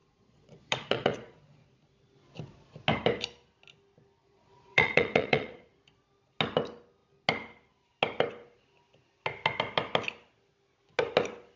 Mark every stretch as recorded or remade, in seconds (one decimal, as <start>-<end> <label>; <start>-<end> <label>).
0.0-1.7 remade; 1.7-4.2 recorded; 4.2-5.7 remade; 5.7-11.6 recorded